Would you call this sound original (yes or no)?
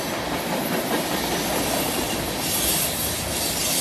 yes